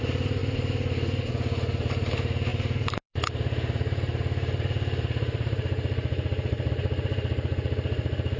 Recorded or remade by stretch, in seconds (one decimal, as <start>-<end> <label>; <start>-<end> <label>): 0.0-0.4 remade; 0.4-1.3 recorded; 1.3-8.4 remade